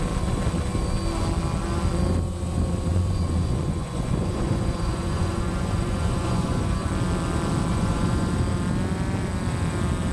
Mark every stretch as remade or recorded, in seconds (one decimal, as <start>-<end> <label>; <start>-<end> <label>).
0.0-2.9 recorded; 2.9-6.9 remade; 6.9-7.7 recorded; 7.7-8.3 remade; 8.3-10.1 recorded